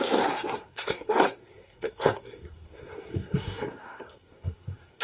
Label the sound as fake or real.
fake